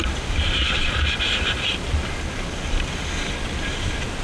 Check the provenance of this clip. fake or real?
real